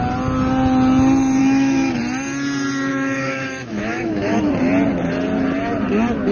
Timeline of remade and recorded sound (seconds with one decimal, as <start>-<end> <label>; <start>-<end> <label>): 0.0-1.4 recorded; 1.4-1.9 remade; 1.9-2.9 recorded; 2.9-4.5 remade; 4.5-6.3 recorded